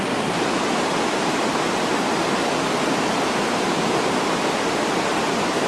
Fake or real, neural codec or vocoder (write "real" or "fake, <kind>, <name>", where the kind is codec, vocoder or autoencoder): fake, vocoder, BigVGAN v2